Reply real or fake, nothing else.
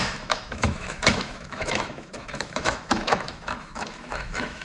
fake